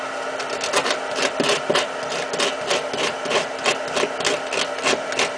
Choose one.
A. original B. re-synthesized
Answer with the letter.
A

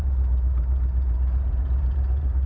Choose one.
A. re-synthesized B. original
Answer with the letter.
A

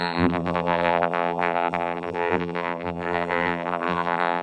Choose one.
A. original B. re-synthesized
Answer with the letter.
B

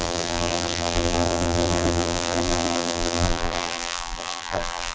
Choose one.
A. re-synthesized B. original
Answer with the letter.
A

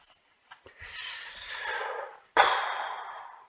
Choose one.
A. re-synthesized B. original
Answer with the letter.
A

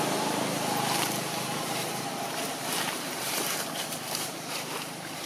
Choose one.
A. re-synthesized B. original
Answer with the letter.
A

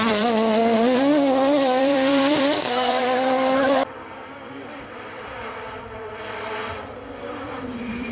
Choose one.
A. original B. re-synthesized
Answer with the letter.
B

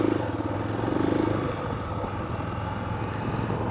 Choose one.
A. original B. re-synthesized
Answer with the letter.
A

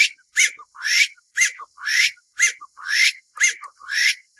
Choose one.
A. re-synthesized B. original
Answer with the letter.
A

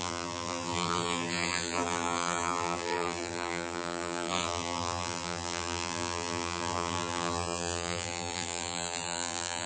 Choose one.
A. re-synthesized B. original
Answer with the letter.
A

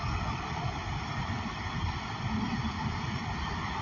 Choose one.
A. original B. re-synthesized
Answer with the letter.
B